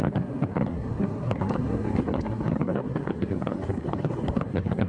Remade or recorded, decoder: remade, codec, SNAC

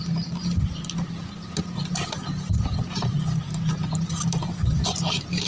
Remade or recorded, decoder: recorded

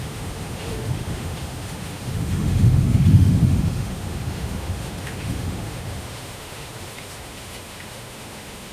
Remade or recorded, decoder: remade, autoencoder, DAC-VAE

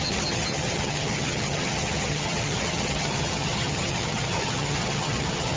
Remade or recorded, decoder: remade, vocoder, HiFi-GAN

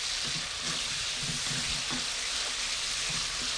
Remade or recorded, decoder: recorded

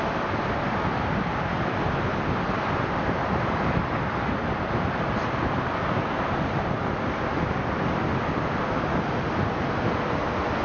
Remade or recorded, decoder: recorded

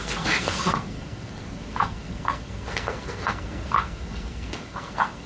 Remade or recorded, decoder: remade, codec, SNAC